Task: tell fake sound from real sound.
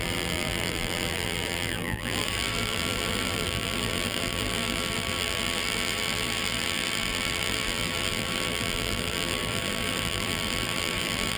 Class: fake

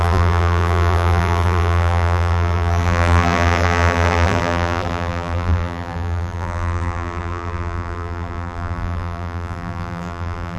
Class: fake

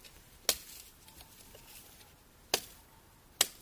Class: real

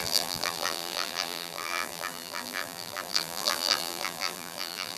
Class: fake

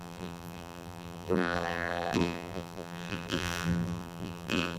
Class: fake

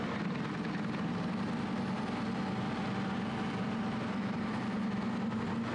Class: fake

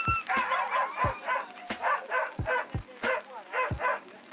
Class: fake